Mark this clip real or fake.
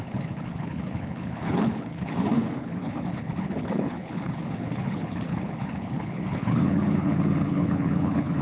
fake